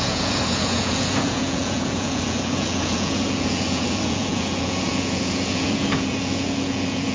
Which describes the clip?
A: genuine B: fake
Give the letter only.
B